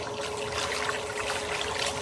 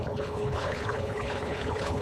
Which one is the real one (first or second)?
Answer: first